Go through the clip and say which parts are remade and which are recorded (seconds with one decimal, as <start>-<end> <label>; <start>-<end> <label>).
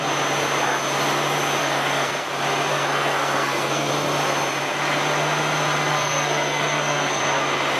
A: 0.0-1.6 recorded; 1.6-2.3 remade; 2.3-2.7 recorded; 2.7-3.9 remade; 3.9-5.9 recorded; 5.9-7.2 remade; 7.2-7.8 recorded